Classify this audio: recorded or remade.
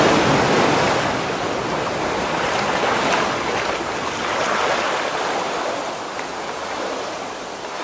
recorded